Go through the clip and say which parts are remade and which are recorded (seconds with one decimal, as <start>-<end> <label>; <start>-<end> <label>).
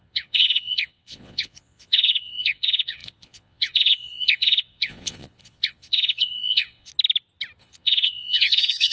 0.0-6.9 remade; 6.9-7.6 recorded; 7.6-8.9 remade